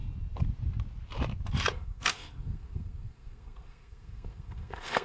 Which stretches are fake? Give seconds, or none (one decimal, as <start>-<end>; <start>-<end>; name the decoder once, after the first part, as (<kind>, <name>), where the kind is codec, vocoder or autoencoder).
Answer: 1.7-5.0 (codec, SNAC)

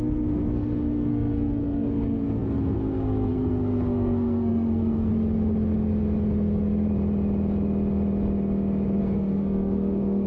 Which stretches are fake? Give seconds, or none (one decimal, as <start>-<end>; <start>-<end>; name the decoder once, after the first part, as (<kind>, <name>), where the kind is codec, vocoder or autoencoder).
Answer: 0.0-5.1 (codec, SNAC); 9.0-10.3

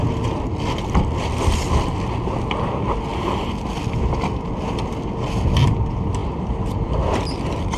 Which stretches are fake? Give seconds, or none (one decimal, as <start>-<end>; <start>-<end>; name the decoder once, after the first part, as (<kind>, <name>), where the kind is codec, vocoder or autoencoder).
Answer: none

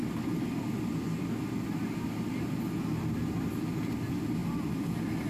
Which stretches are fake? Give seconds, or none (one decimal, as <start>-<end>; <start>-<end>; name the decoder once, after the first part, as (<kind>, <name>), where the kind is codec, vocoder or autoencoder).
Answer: none

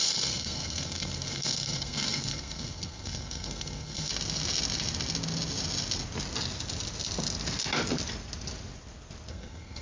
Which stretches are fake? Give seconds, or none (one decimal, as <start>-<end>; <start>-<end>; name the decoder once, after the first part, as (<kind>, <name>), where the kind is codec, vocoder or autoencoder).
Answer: 0.0-4.1 (codec, SNAC); 9.3-9.8

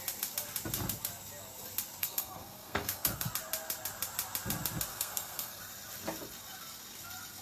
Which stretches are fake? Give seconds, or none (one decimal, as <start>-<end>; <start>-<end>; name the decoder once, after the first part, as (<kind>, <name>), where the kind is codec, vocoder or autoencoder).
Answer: 2.0-3.3 (codec, SNAC); 4.9-5.6